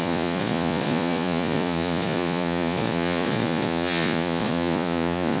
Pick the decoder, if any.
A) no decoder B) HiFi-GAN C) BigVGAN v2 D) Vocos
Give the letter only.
D